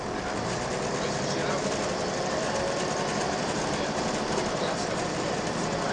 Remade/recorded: recorded